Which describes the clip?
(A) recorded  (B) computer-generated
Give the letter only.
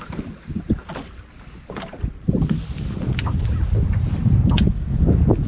A